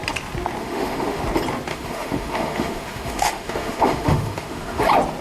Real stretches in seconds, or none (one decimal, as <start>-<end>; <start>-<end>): 0.0-0.6; 1.2-1.7; 4.8-5.2